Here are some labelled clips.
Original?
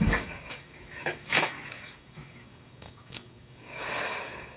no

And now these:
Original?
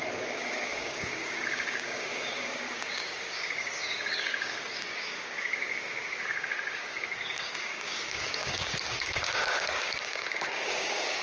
no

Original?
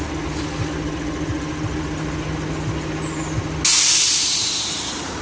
yes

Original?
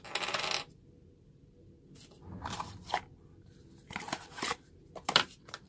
yes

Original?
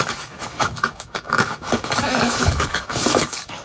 no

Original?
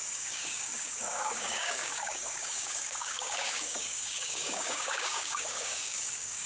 no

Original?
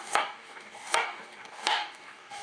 no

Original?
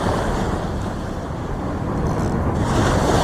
yes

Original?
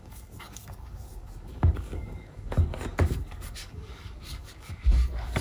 no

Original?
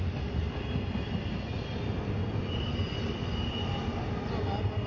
yes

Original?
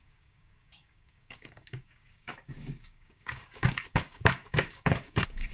no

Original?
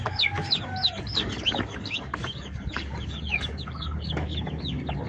no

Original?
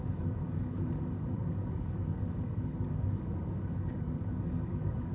no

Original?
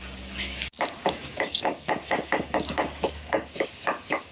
no